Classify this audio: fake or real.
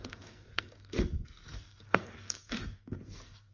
fake